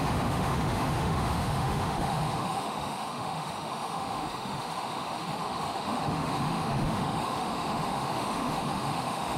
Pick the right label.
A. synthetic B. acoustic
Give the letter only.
A